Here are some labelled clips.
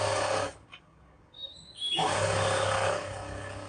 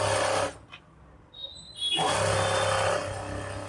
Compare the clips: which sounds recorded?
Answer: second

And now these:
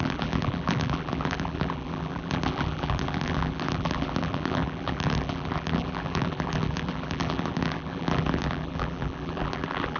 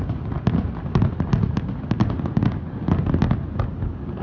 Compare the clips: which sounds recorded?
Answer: second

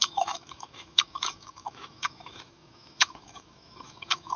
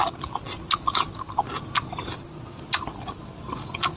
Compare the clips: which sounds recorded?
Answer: second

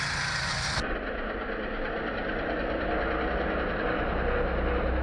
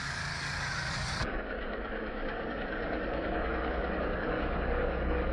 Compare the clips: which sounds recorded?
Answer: first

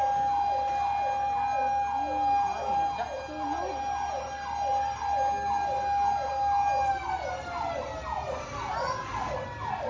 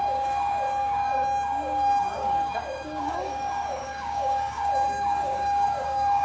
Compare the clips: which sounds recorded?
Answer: first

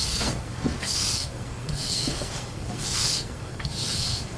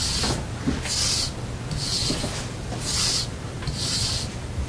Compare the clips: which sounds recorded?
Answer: second